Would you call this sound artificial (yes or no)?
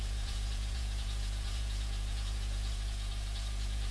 yes